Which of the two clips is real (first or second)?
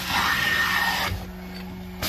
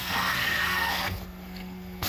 first